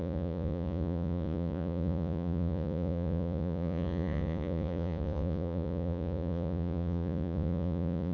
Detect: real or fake fake